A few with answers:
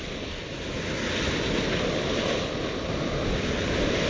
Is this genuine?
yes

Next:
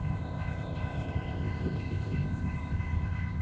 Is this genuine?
no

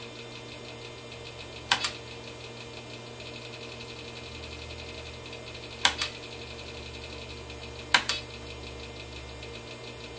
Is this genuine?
yes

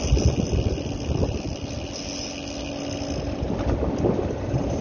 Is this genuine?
yes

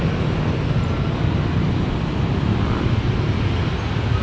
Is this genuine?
yes